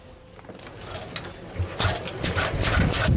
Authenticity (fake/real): real